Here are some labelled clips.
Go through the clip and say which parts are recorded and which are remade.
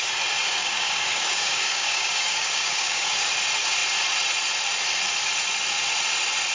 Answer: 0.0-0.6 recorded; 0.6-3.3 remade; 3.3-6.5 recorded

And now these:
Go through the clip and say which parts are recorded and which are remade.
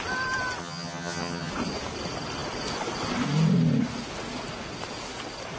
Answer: 0.0-0.6 recorded; 0.6-1.5 remade; 1.5-5.6 recorded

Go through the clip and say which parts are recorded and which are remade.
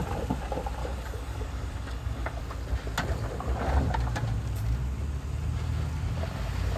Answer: 0.0-0.8 recorded; 0.8-2.4 remade; 2.4-6.8 recorded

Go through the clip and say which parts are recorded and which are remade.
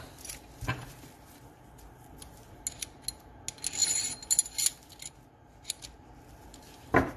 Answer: 0.0-7.2 recorded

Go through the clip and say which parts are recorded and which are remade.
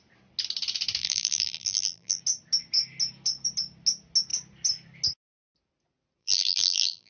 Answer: 0.0-1.0 recorded; 1.0-2.2 remade; 2.2-6.2 recorded; 6.2-7.1 remade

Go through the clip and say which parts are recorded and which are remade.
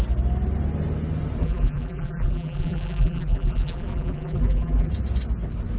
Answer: 0.0-1.4 recorded; 1.4-4.9 remade; 4.9-5.8 recorded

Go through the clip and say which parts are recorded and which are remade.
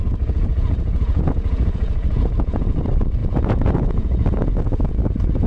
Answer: 0.0-2.8 remade; 2.8-3.2 recorded; 3.2-4.8 remade; 4.8-5.5 recorded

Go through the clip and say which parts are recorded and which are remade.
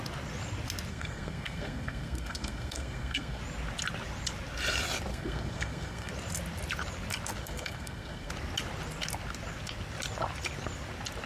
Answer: 0.0-0.9 recorded; 0.9-3.4 remade; 3.4-5.1 recorded; 5.1-6.1 remade; 6.1-7.4 recorded; 7.4-8.3 remade; 8.3-11.3 recorded